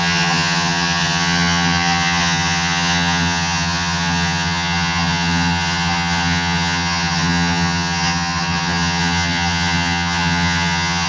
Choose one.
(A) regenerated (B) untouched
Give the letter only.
A